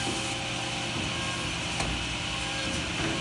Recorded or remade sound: recorded